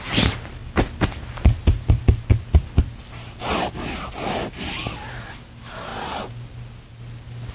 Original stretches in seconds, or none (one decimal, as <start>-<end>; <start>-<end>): 0.0-0.6; 2.0-7.5